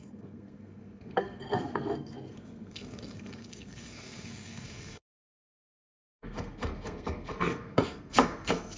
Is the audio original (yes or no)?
no